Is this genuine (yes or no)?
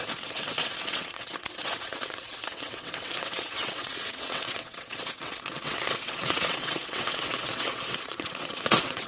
no